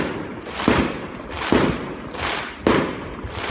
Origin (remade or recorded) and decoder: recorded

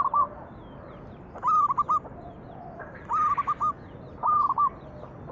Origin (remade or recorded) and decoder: recorded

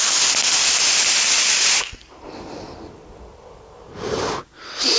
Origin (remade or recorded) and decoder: recorded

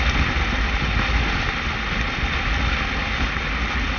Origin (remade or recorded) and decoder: recorded